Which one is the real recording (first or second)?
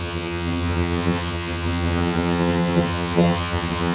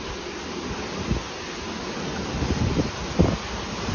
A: second